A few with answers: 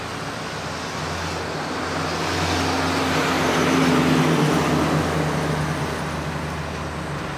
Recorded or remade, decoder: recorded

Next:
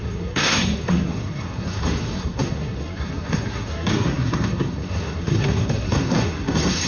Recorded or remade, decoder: remade, codec, SNAC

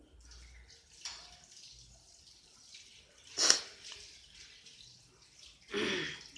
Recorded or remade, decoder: recorded